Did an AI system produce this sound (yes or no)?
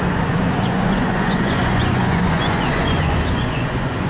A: yes